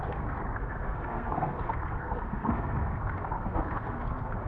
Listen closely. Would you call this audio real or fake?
fake